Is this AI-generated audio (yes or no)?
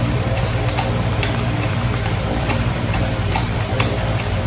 yes